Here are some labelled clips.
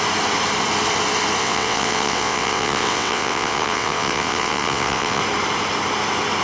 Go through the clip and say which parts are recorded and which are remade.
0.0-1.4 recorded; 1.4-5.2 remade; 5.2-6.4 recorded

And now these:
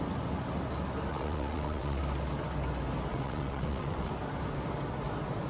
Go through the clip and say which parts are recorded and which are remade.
0.0-1.1 recorded; 1.1-2.0 remade; 2.0-3.1 recorded; 3.1-4.1 remade; 4.1-5.5 recorded

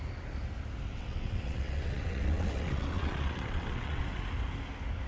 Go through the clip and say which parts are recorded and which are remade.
0.0-0.9 recorded; 0.9-4.0 remade; 4.0-5.1 recorded

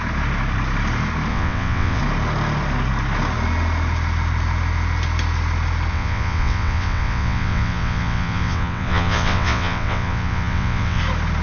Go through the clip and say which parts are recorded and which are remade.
0.0-1.3 recorded; 1.3-2.0 remade; 2.0-5.9 recorded; 5.9-11.0 remade; 11.0-11.4 recorded

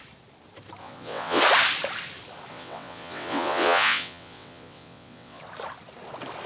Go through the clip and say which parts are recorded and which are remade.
0.0-0.8 recorded; 0.8-1.4 remade; 1.4-2.5 recorded; 2.5-5.4 remade; 5.4-6.5 recorded